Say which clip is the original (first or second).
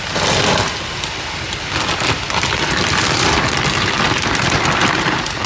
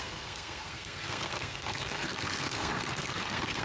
first